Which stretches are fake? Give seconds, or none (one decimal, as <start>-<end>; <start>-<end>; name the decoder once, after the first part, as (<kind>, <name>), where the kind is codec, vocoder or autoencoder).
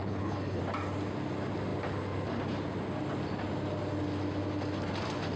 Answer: 0.0-0.6 (codec, HILCodec)